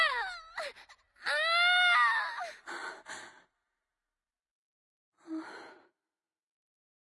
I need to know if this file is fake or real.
real